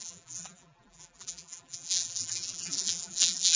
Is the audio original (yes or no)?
no